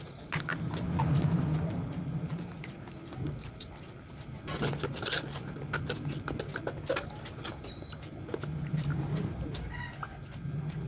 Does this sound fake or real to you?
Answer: real